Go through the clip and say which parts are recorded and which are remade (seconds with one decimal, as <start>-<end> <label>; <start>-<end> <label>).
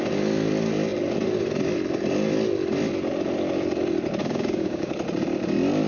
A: 0.0-4.2 recorded; 4.2-4.9 remade; 4.9-5.9 recorded